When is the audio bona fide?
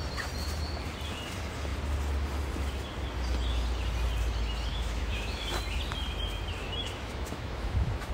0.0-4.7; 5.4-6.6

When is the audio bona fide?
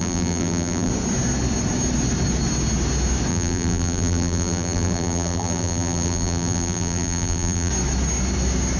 0.9-3.3; 7.7-8.8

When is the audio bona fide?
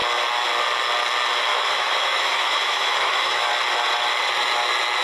0.0-1.5; 3.5-5.0